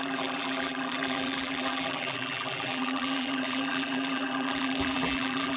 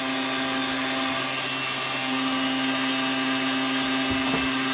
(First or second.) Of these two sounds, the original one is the second